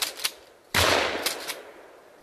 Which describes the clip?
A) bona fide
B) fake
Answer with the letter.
A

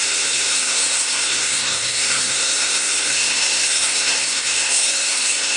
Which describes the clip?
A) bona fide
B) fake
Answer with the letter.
B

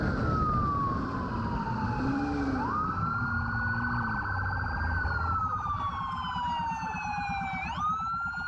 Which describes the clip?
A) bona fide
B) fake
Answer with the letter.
A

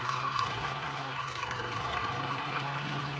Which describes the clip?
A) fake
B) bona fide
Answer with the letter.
A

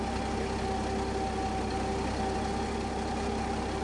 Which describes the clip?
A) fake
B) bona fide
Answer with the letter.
B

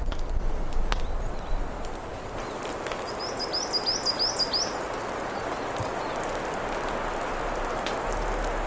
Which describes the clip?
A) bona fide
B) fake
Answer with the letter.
A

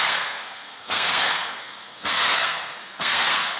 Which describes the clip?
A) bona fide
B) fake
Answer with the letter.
B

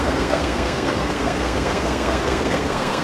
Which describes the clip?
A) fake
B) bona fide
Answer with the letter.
A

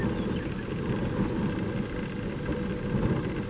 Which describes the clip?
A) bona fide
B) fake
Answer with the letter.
A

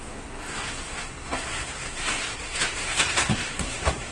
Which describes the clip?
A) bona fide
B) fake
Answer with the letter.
B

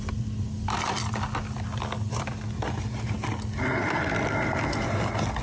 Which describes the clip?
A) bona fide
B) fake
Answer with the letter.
A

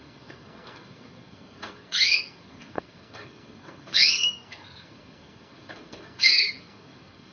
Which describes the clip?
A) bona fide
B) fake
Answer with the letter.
B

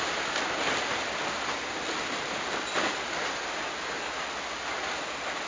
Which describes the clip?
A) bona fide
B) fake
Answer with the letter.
A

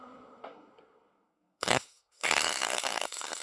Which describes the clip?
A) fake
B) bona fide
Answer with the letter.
A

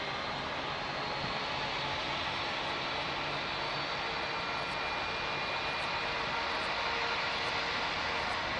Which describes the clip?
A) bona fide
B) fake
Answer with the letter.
A